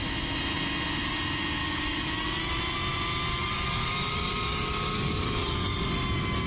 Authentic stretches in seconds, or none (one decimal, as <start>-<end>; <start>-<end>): 0.0-1.6; 2.4-3.3; 5.9-6.5

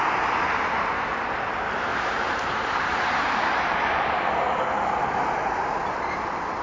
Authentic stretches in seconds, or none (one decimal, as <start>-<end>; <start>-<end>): 0.0-1.9; 5.9-6.6

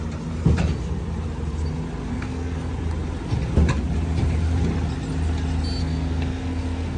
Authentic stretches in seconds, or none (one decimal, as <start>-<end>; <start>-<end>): 0.0-2.1; 2.7-5.8